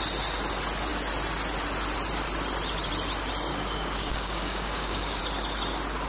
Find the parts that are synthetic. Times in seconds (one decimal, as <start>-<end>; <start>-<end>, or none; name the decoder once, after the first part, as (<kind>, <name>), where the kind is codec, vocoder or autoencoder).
3.5-5.2 (codec, DAC)